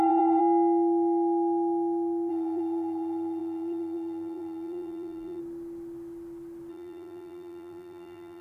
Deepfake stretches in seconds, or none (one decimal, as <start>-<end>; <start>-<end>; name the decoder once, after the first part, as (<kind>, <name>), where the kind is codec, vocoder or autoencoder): 0.0-0.4 (vocoder, BigVGAN v2); 2.3-5.4; 6.7-8.4